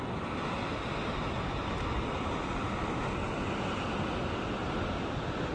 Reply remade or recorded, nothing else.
recorded